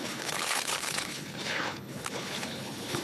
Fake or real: fake